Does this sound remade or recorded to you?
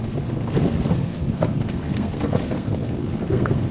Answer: remade